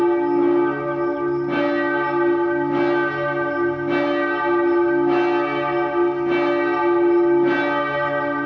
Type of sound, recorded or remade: recorded